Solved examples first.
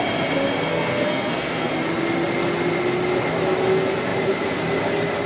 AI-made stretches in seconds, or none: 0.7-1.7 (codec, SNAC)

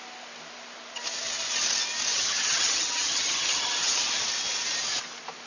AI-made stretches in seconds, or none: 2.1-4.0 (vocoder, HiFi-GAN)